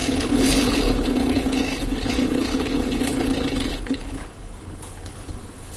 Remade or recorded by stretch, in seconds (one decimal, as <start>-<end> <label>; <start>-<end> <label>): 0.0-5.8 remade